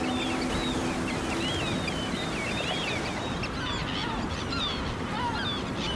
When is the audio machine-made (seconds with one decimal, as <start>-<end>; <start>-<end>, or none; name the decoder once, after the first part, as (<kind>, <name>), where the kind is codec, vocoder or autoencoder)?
none